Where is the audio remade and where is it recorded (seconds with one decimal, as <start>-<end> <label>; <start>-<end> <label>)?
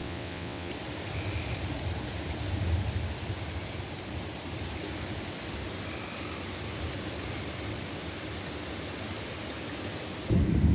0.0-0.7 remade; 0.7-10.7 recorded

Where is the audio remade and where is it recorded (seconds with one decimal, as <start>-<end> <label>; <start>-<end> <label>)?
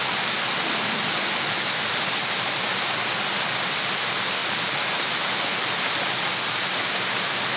0.0-4.4 recorded; 4.4-5.7 remade; 5.7-7.6 recorded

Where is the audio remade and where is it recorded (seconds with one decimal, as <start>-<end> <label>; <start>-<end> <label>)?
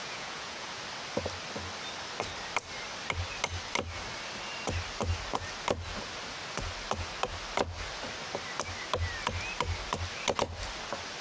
0.0-0.8 remade; 0.8-11.2 recorded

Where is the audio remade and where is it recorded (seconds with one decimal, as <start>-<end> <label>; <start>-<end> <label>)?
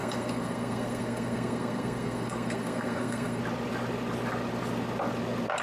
0.0-3.4 remade; 3.4-5.6 recorded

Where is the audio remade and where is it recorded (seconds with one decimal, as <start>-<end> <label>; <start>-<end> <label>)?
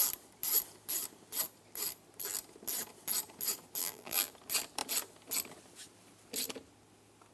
0.0-3.8 recorded; 3.8-4.3 remade; 4.3-7.3 recorded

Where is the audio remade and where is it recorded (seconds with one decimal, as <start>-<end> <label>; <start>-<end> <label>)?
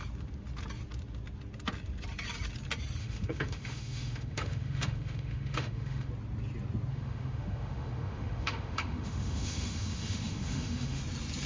0.0-3.0 recorded; 3.0-6.1 remade; 6.1-6.9 recorded; 6.9-11.0 remade; 11.0-11.5 recorded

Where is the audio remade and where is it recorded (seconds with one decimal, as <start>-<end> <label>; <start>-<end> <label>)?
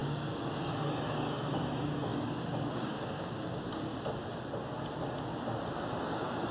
0.0-3.9 remade; 3.9-6.0 recorded; 6.0-6.5 remade